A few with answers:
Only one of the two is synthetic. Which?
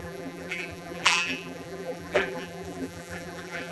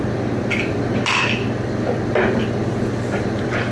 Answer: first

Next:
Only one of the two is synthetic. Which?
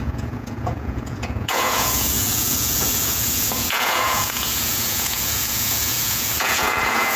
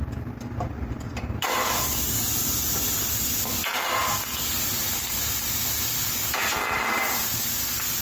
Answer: first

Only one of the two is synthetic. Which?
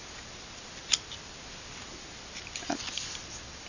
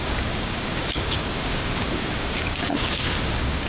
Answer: second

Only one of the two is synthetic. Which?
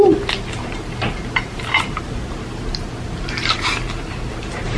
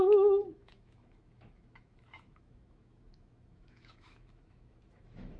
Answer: second